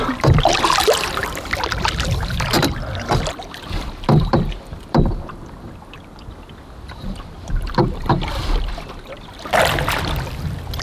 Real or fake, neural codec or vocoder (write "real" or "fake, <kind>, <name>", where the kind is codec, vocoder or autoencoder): fake, vocoder, BigVGAN v2